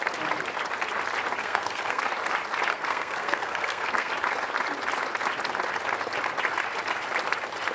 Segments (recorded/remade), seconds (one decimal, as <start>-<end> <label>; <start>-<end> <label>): 0.0-1.4 recorded; 1.4-2.0 remade; 2.0-2.7 recorded; 2.7-4.1 remade; 4.1-7.7 recorded